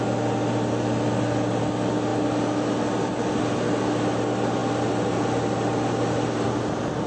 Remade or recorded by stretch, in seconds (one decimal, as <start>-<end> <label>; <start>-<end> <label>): 0.0-7.1 recorded